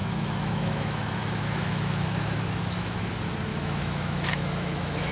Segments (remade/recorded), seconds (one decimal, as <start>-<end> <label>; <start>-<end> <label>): 0.0-3.1 remade; 3.1-3.5 recorded; 3.5-5.1 remade